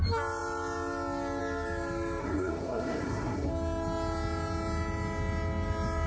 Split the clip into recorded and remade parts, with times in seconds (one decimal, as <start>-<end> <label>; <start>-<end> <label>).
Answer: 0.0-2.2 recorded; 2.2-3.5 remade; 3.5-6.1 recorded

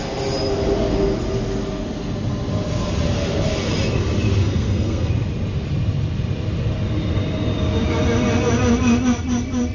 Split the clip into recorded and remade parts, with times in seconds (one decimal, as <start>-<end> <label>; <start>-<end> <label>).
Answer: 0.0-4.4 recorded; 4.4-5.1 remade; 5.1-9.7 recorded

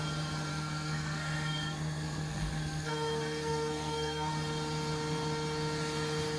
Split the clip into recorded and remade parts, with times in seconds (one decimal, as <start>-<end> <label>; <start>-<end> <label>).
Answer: 0.0-0.5 recorded; 0.5-4.3 remade; 4.3-6.4 recorded

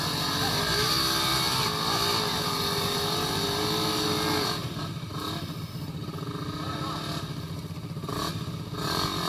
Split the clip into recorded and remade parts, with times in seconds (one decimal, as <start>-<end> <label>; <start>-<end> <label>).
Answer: 0.0-9.3 recorded

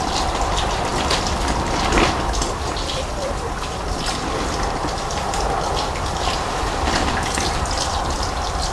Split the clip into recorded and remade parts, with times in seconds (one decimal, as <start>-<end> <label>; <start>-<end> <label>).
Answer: 0.0-8.7 recorded

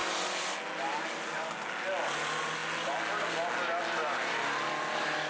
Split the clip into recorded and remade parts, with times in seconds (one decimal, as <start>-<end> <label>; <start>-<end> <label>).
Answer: 0.0-5.3 recorded

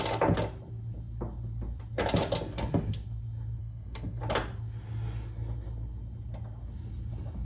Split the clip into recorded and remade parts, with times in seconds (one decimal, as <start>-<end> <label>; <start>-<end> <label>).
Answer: 0.0-3.6 recorded; 3.6-4.2 remade; 4.2-7.4 recorded